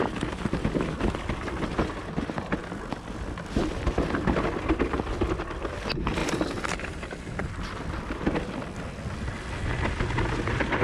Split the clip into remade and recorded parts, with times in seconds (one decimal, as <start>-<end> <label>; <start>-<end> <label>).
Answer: 0.0-6.2 recorded; 6.2-7.5 remade; 7.5-10.8 recorded